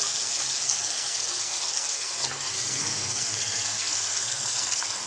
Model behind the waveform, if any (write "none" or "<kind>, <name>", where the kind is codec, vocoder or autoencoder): codec, SNAC